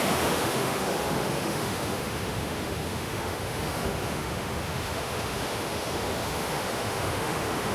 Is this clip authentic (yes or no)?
no